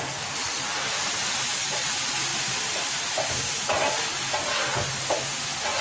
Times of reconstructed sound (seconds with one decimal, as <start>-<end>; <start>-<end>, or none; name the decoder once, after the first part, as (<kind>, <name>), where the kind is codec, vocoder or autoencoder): 2.3-3.5 (vocoder, BigVGAN v2)